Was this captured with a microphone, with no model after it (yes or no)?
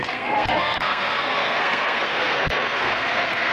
no